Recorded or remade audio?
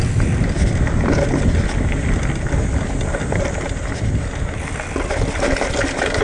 recorded